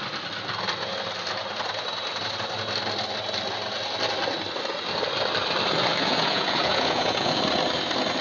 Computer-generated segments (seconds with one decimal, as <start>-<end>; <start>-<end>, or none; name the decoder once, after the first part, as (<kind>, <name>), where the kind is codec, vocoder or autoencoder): 6.0-7.4 (vocoder, Vocos)